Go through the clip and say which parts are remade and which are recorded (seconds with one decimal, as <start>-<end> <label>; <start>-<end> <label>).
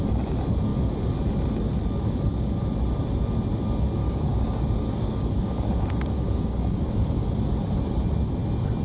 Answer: 0.0-4.0 recorded; 4.0-7.3 remade; 7.3-8.8 recorded